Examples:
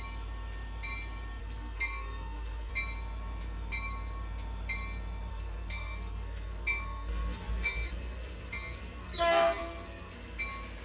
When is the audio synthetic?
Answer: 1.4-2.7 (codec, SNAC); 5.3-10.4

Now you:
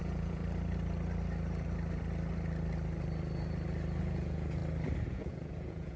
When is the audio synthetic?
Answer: 0.0-0.4 (vocoder, Vocos); 4.0-4.6; 5.1-6.0

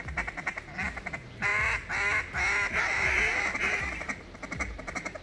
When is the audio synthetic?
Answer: 0.0-1.5 (vocoder, BigVGAN v2); 2.7-5.2

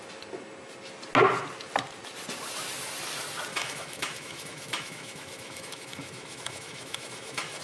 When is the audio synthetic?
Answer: 3.5-7.6 (autoencoder, DAC-VAE)

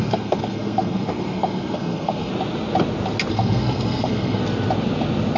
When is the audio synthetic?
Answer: 0.0-2.3 (codec, SNAC); 3.3-4.4

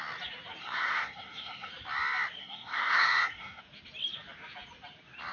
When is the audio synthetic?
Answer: 0.6-1.7 (codec, SNAC); 2.4-3.6

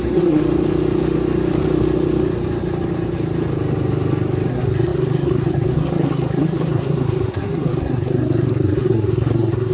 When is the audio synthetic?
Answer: 0.0-0.4 (codec, SNAC); 4.5-9.7

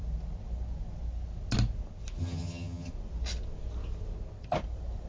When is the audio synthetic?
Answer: 2.2-2.9 (vocoder, HiFi-GAN)